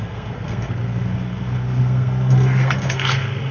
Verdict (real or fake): fake